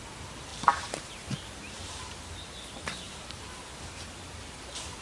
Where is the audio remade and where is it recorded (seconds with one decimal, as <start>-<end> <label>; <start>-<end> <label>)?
0.0-0.5 recorded; 0.5-3.5 remade; 3.5-5.0 recorded